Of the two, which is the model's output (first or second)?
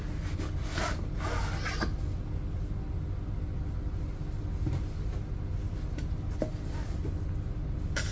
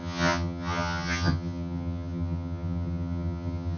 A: second